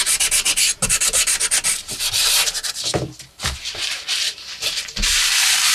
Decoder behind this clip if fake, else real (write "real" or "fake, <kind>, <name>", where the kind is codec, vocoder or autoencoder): fake, vocoder, BigVGAN v2